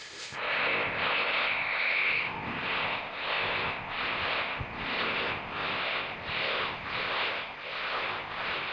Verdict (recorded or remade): remade